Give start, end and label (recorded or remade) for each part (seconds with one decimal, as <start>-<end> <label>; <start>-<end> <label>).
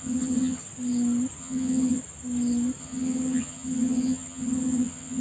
0.0-0.6 remade; 0.6-1.4 recorded; 1.4-2.0 remade; 2.0-2.8 recorded; 2.8-5.2 remade